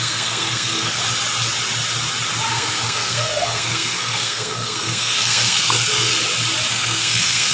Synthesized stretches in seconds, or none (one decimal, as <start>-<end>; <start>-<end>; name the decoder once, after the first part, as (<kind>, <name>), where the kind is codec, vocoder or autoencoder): 0.0-1.0 (codec, SNAC); 2.5-6.1; 6.7-7.5